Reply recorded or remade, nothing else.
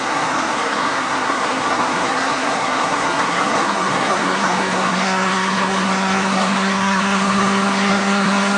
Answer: remade